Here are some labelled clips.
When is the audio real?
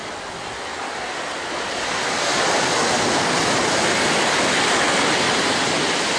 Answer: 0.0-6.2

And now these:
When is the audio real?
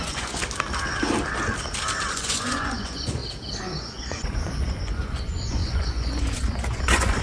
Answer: 0.4-2.1; 3.2-3.8